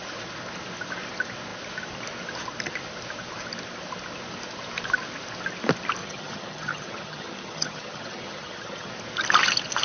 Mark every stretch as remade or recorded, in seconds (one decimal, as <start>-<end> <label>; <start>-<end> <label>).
0.0-6.0 recorded; 6.0-8.9 remade; 8.9-9.8 recorded